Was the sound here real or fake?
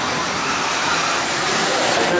real